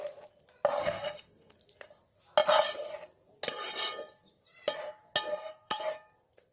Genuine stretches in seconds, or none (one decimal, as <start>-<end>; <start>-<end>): 0.0-0.8; 1.5-5.3; 5.8-6.5